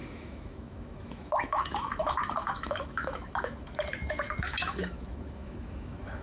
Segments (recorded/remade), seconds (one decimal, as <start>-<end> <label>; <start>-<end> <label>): 0.0-6.2 remade